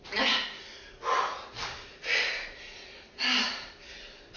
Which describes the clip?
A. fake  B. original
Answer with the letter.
B